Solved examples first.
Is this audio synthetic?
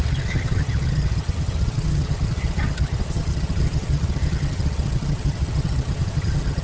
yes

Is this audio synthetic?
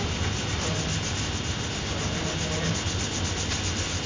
no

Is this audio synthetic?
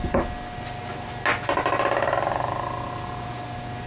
no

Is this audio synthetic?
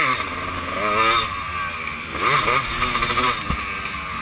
no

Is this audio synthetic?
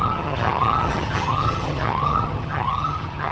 yes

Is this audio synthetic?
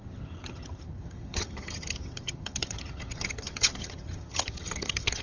yes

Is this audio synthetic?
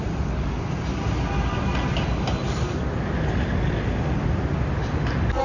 no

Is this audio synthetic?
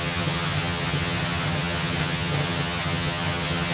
yes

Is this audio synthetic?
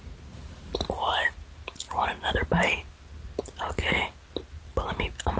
no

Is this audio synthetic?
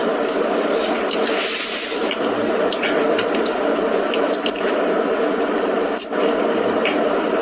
no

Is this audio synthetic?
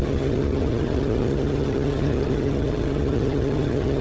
yes